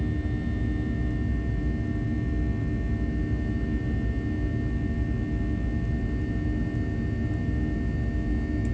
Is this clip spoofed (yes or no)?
no